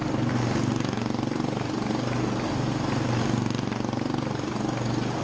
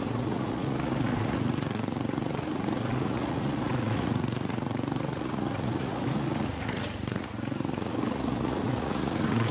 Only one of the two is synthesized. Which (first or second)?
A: second